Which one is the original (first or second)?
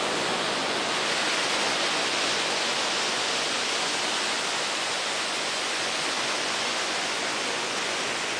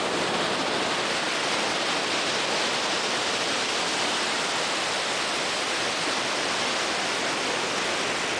second